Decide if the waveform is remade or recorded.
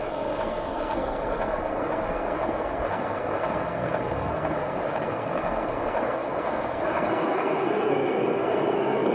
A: remade